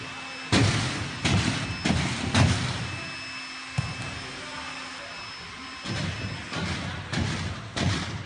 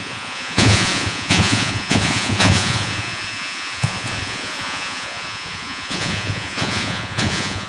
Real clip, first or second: first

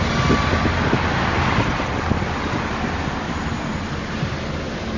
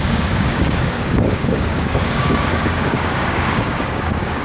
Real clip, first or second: first